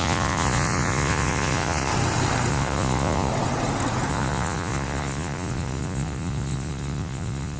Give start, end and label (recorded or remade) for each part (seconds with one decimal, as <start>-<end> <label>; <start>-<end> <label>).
0.0-1.9 remade; 1.9-2.5 recorded; 2.5-3.3 remade; 3.3-4.1 recorded; 4.1-7.6 remade